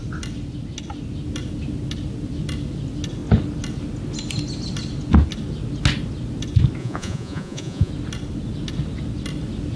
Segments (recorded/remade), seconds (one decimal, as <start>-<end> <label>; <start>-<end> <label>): 0.0-6.8 recorded; 6.8-7.9 remade; 7.9-9.8 recorded